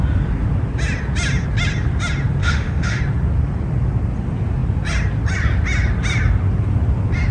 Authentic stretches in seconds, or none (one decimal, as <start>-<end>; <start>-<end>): 0.0-2.4; 3.0-7.3